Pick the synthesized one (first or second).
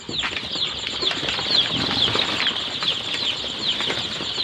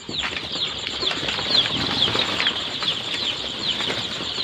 second